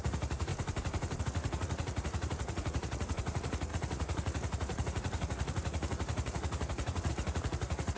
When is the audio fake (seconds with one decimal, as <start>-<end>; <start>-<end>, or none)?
0.0-0.5; 1.2-8.0